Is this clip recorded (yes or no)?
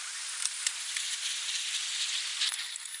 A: yes